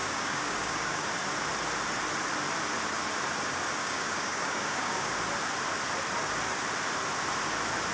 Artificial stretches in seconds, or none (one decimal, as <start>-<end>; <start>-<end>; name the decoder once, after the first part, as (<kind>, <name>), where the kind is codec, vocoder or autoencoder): 0.0-1.1 (codec, DAC); 3.8-5.1

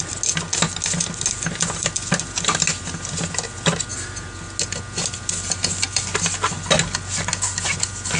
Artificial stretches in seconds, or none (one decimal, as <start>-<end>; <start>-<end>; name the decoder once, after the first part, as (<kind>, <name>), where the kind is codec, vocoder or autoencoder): none

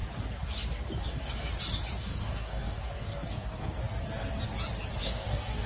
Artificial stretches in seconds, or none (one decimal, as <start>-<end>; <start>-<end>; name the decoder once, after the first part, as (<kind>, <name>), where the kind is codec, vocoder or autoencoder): 1.0-1.5 (codec, SNAC); 2.0-3.8; 5.0-5.7

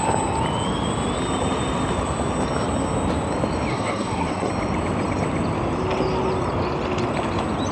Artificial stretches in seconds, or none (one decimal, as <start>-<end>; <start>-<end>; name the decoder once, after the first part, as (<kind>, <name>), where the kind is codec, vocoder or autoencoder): 3.7-4.5 (codec, SNAC)

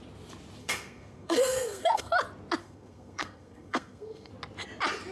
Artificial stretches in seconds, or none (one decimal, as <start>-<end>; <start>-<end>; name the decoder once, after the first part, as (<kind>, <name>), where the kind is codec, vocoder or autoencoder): 0.6-2.1 (codec, SNAC); 2.6-4.3

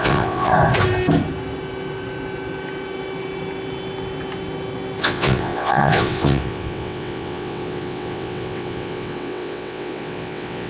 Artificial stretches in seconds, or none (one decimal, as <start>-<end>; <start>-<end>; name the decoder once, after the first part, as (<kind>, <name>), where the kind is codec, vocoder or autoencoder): 0.0-0.5 (vocoder, WaveNeXt); 5.0-10.7